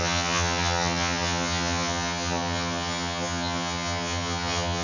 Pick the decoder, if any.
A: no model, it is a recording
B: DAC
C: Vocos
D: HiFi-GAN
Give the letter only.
D